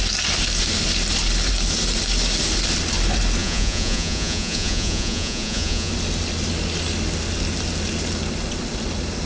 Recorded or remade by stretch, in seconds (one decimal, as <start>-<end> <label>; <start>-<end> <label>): 0.0-3.4 recorded; 3.4-5.9 remade; 5.9-9.3 recorded